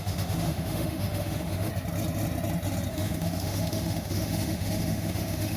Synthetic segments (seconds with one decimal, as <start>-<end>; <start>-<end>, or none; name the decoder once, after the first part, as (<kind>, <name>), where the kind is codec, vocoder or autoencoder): 0.0-1.7 (autoencoder, DAC-VAE); 2.9-5.6